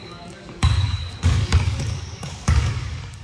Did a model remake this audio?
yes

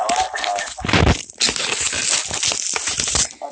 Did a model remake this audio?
no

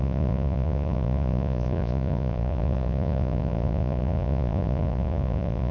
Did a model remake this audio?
yes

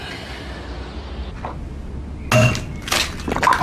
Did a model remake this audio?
no